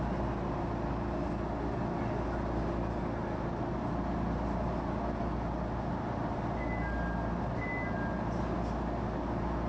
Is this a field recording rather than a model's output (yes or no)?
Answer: yes